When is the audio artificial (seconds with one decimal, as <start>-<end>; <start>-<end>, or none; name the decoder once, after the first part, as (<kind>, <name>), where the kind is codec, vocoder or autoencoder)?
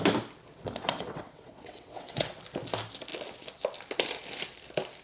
0.8-2.4 (vocoder, WaveNeXt)